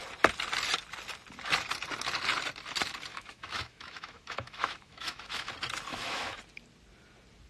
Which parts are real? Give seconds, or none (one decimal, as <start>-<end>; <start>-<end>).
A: 0.0-3.1; 5.5-5.9; 6.4-7.5